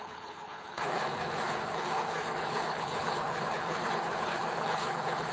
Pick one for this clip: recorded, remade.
remade